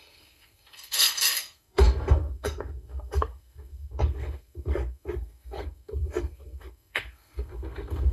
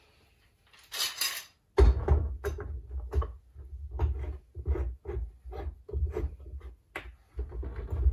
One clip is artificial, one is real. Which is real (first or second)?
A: second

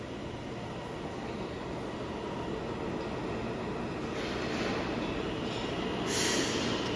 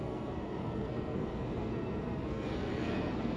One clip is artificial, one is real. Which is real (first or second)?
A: first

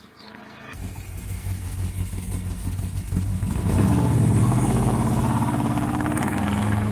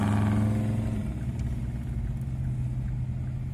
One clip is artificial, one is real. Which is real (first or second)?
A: second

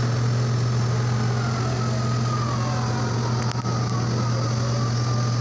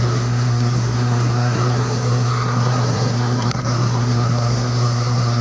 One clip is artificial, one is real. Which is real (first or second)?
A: first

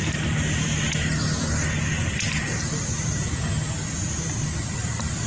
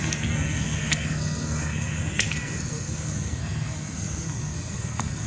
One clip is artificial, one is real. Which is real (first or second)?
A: first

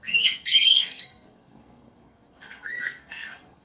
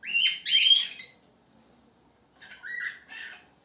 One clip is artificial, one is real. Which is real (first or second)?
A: second